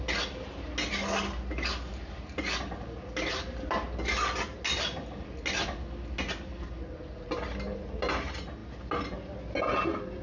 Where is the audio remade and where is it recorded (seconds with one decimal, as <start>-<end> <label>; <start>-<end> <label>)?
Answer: 0.0-10.2 recorded